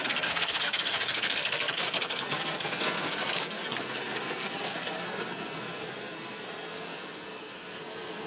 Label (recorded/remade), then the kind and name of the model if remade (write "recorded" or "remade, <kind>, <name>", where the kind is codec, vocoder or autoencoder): remade, codec, SNAC